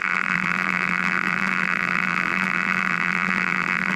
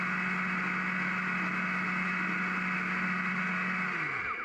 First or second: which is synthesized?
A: first